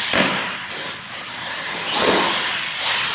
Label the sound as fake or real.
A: real